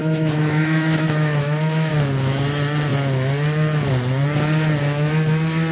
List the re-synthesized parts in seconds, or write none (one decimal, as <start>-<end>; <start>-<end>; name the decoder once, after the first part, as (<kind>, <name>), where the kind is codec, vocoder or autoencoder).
0.0-1.9 (autoencoder, DAC-VAE)